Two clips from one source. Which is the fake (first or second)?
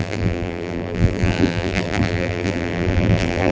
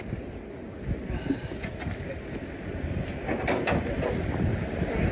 first